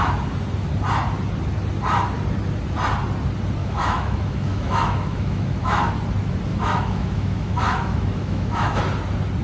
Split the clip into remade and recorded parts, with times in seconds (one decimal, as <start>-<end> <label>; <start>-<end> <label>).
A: 0.0-3.6 recorded; 3.6-5.9 remade; 5.9-6.5 recorded; 6.5-8.8 remade; 8.8-9.4 recorded